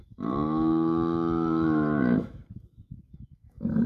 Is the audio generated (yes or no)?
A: yes